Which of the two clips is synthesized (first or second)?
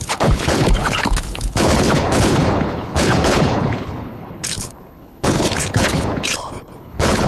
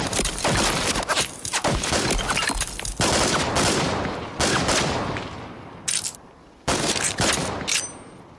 first